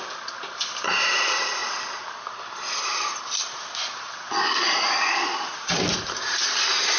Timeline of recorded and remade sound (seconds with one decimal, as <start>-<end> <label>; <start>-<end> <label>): 0.0-1.6 recorded; 1.6-5.8 remade; 5.8-7.0 recorded